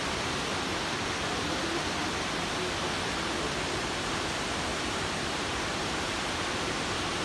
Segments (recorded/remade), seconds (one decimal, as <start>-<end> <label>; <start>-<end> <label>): 0.0-4.7 recorded; 4.7-6.1 remade; 6.1-7.2 recorded

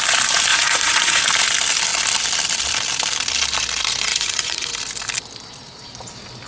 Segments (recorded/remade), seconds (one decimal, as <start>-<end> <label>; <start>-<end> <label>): 0.0-0.5 recorded; 0.5-1.2 remade; 1.2-4.1 recorded; 4.1-4.7 remade; 4.7-6.5 recorded